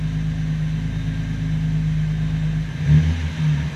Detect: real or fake real